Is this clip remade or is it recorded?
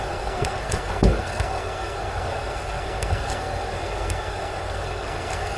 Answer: remade